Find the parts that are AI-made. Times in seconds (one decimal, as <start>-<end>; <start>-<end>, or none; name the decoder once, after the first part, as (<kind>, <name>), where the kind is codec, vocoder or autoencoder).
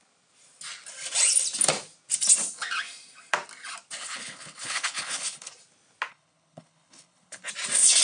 4.0-5.5 (codec, HILCodec); 6.1-7.5